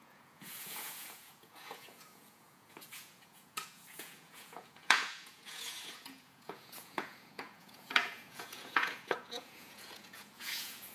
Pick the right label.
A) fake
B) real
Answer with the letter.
A